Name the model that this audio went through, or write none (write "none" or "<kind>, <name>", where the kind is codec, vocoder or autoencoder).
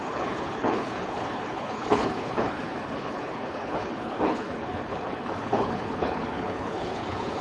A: codec, HILCodec